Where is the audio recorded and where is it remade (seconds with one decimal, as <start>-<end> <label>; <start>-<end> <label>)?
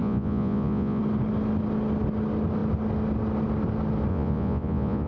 0.0-1.0 remade; 1.0-4.1 recorded; 4.1-5.1 remade